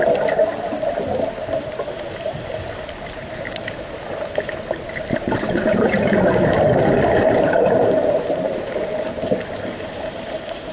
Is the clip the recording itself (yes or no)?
no